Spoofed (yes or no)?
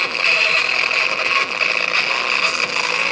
no